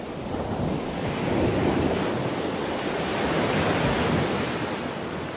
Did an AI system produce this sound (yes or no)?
no